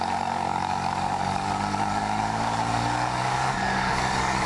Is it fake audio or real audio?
fake